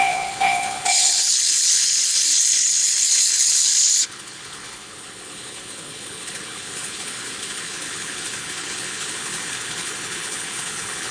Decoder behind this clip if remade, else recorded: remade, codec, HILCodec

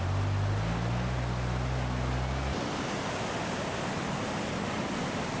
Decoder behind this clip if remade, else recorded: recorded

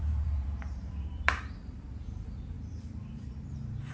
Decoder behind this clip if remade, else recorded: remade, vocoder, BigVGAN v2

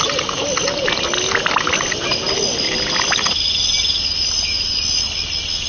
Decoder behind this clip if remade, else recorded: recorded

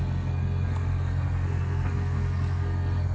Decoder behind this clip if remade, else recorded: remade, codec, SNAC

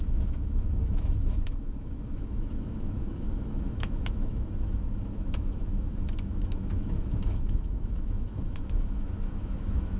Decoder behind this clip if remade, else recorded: remade, autoencoder, DAC-VAE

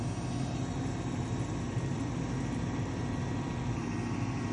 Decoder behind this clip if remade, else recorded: recorded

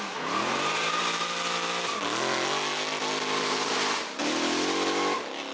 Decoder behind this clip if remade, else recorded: recorded